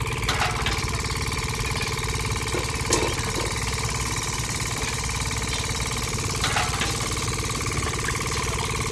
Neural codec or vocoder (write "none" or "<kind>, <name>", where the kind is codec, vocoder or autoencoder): none